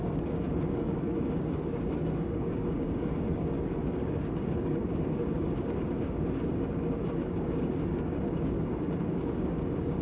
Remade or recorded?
remade